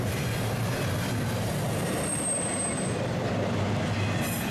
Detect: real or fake real